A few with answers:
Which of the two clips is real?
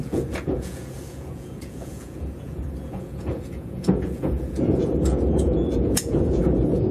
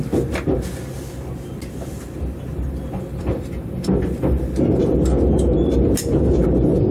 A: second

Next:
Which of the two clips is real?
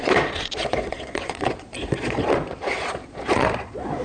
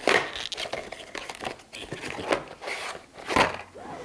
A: second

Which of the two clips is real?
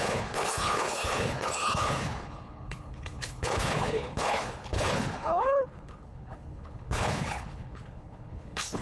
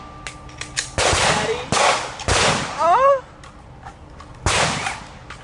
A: second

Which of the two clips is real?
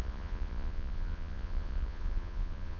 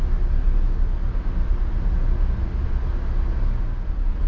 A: second